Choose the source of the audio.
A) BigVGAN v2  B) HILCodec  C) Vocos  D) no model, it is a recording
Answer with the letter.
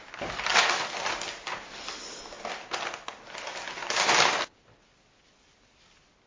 D